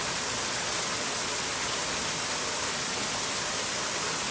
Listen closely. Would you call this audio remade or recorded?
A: recorded